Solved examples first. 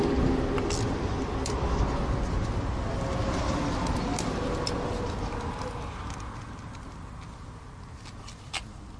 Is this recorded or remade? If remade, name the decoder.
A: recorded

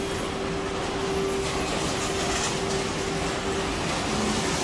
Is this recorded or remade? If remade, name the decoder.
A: recorded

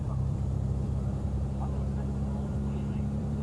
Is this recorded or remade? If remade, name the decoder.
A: remade, vocoder, BigVGAN v2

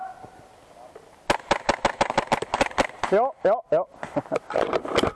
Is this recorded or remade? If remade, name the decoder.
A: recorded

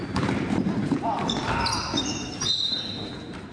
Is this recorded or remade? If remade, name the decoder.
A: remade, vocoder, BigVGAN v2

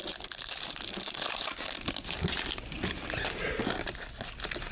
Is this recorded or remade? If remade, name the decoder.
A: recorded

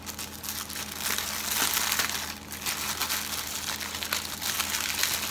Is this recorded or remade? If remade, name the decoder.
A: recorded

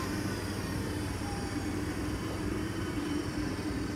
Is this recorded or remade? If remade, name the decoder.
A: remade, vocoder, BigVGAN v2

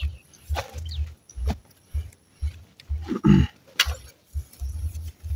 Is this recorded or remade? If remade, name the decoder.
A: recorded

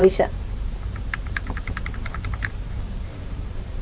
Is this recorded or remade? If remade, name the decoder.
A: remade, vocoder, BigVGAN v2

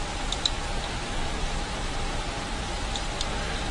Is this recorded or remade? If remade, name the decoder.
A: recorded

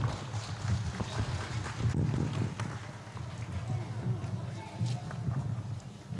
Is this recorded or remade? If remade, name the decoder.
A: recorded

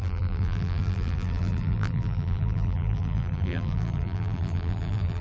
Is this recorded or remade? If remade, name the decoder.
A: remade, vocoder, BigVGAN v2